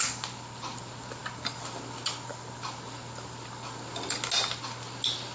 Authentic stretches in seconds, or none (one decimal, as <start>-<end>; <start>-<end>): 0.0-5.3

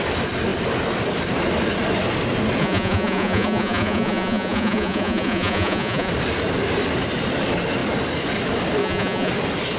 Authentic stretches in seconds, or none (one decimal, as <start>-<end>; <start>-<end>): 0.0-2.6; 6.1-8.8; 9.3-9.8